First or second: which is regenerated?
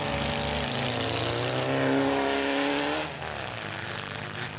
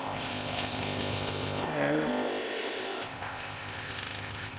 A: second